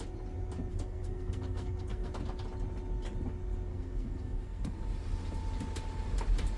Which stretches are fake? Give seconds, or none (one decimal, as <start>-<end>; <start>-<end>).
0.7-2.1; 3.7-4.8

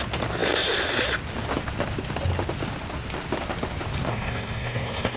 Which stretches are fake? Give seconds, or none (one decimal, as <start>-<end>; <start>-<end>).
4.1-5.2

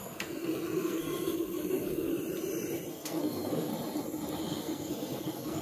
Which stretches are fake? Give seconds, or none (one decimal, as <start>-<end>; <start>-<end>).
0.0-2.1; 2.9-3.7; 4.4-5.6

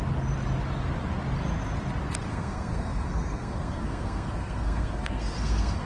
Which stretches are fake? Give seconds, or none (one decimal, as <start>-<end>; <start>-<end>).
2.3-5.9

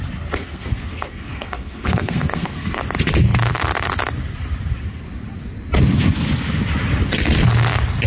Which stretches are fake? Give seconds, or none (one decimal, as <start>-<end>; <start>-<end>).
0.4-2.8

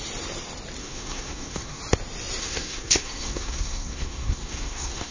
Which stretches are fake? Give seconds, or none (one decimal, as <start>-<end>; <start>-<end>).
0.8-1.8; 2.4-5.1

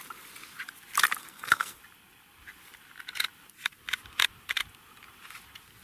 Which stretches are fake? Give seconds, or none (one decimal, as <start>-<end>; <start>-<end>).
1.2-1.8

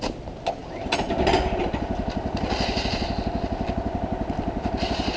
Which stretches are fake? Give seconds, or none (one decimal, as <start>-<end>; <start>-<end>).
none